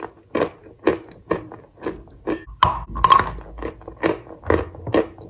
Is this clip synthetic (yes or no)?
no